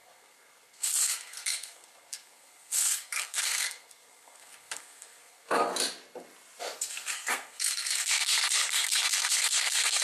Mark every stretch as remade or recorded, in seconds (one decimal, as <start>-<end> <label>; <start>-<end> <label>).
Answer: 0.0-5.7 remade; 5.7-6.6 recorded; 6.6-10.0 remade